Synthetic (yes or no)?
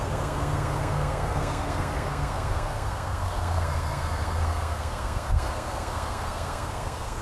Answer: yes